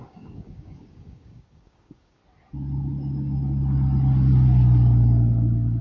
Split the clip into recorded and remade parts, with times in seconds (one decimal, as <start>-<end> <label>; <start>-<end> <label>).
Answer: 0.0-2.2 remade; 2.2-5.8 recorded